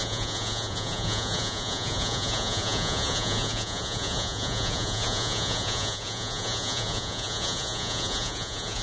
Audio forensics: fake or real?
fake